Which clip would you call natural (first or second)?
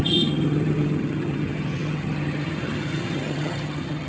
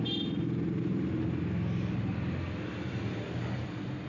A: second